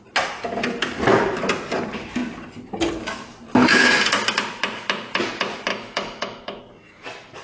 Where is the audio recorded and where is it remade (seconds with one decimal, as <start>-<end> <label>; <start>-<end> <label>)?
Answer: 0.0-5.7 recorded; 5.7-6.6 remade; 6.6-7.4 recorded